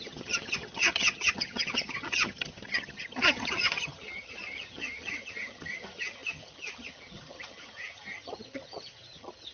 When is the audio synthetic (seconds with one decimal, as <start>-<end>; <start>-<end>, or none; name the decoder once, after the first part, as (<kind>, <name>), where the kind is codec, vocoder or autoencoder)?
0.0-9.5 (vocoder, HiFi-GAN)